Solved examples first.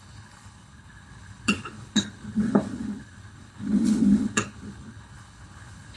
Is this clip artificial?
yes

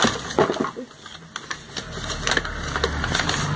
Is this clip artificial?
no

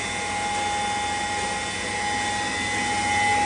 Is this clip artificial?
no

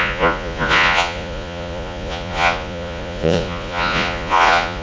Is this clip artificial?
yes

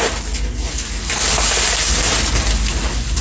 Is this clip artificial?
no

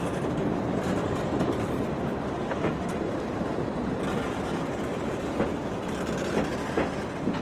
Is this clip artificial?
yes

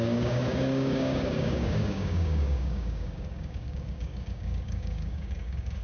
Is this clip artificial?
yes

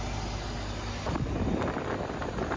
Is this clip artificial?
no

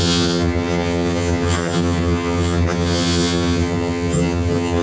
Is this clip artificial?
yes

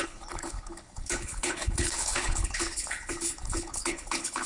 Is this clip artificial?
yes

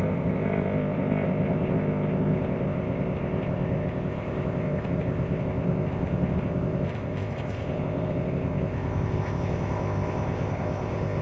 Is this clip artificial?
yes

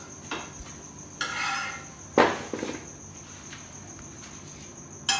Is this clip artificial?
no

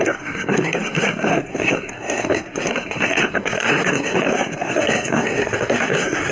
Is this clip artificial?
yes